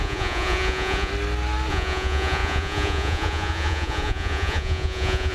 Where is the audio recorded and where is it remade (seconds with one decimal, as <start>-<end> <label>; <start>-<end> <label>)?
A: 0.0-1.1 remade; 1.1-1.7 recorded; 1.7-5.3 remade